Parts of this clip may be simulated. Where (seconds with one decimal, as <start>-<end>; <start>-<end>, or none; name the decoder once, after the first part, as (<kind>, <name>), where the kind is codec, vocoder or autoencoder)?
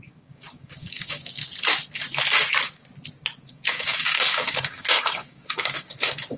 0.0-1.4 (codec, DAC); 3.5-6.4